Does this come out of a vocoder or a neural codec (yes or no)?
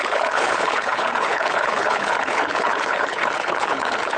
yes